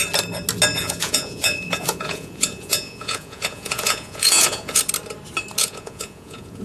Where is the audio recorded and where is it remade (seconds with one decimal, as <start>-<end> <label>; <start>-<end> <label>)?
0.0-0.8 recorded; 0.8-4.8 remade; 4.8-5.6 recorded; 5.6-6.6 remade